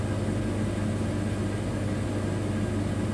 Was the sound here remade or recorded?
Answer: recorded